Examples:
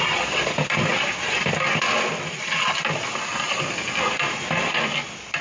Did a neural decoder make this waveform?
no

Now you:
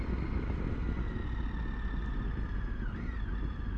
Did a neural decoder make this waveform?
no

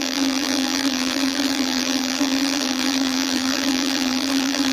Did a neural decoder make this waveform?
yes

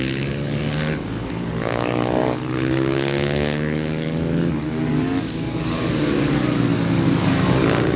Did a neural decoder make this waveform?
yes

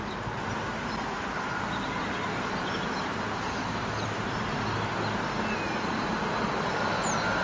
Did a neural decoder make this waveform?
no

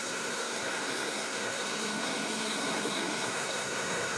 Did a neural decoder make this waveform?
yes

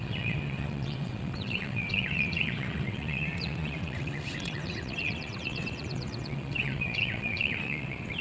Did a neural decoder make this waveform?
yes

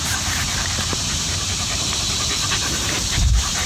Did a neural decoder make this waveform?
yes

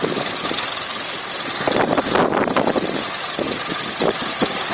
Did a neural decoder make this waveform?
no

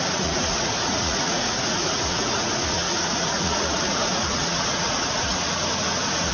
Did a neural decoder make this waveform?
yes